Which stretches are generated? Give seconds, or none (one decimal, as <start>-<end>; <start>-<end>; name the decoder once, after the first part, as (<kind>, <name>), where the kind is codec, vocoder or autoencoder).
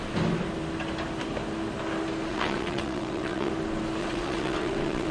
2.3-3.5 (vocoder, WaveNeXt); 4.0-5.1